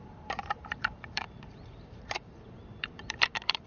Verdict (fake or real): fake